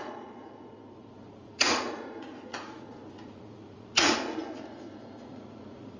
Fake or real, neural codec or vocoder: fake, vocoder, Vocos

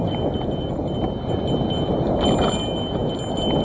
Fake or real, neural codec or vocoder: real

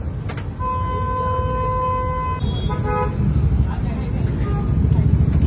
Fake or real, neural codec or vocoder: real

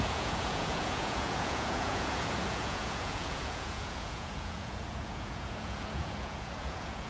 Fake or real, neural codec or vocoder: fake, vocoder, Vocos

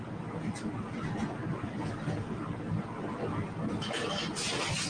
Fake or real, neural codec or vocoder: real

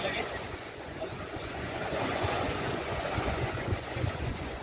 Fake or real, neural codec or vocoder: fake, vocoder, Vocos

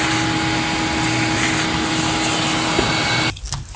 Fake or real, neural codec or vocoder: real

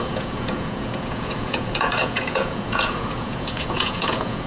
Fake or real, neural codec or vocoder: fake, vocoder, Vocos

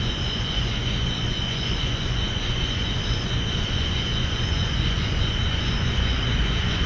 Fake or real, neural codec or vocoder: fake, vocoder, Vocos